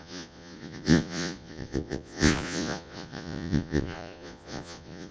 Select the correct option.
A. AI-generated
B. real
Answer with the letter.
A